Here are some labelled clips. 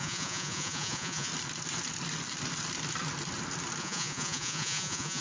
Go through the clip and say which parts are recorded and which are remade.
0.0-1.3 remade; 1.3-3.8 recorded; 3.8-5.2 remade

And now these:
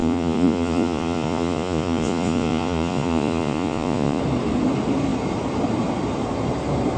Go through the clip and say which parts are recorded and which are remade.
0.0-4.2 remade; 4.2-7.0 recorded

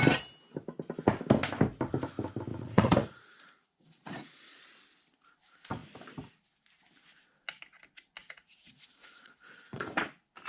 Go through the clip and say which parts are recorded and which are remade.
0.0-2.5 recorded; 2.5-4.6 remade; 4.6-8.2 recorded; 8.2-10.0 remade; 10.0-10.5 recorded